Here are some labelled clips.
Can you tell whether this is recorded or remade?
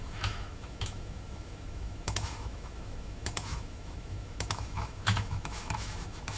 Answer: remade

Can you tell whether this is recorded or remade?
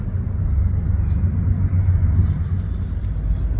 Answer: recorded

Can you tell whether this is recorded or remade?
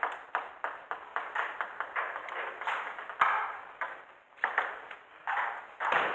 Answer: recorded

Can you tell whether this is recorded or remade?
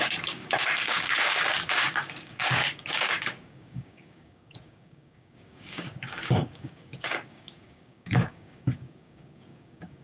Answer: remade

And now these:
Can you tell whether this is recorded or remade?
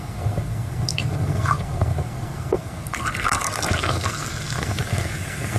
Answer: remade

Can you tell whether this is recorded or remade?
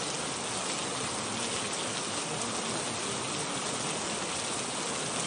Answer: recorded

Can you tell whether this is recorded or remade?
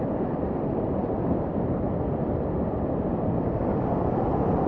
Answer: remade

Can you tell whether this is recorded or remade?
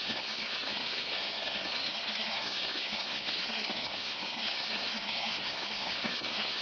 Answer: remade